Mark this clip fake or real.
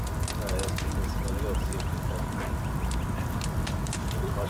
real